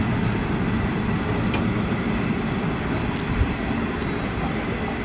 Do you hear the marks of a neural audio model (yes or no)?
no